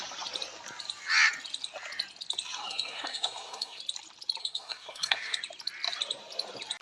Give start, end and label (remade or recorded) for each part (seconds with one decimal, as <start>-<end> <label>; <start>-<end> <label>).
0.0-2.7 recorded; 2.7-3.8 remade; 3.8-4.4 recorded; 4.4-5.4 remade; 5.4-6.8 recorded

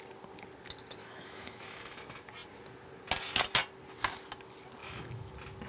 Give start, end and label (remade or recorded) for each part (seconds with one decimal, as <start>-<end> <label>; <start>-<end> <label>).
0.0-1.0 recorded; 1.0-2.0 remade; 2.0-4.8 recorded; 4.8-5.3 remade; 5.3-5.7 recorded

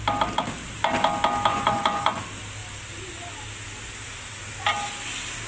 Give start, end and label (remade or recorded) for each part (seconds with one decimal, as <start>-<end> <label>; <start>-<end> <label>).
0.0-1.5 recorded; 1.5-2.2 remade; 2.2-5.5 recorded

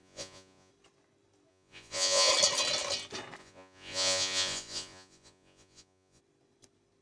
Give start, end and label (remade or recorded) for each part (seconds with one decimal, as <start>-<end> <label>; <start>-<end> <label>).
0.0-0.7 remade; 0.7-1.5 recorded; 1.5-2.3 remade; 2.3-3.4 recorded; 3.4-6.2 remade; 6.2-7.0 recorded

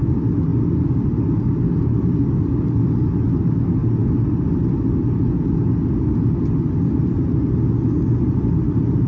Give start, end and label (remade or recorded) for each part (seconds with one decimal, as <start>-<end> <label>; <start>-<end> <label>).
0.0-9.1 recorded